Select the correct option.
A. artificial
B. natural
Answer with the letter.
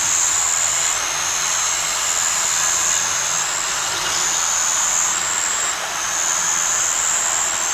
B